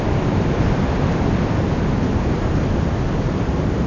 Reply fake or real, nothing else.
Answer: real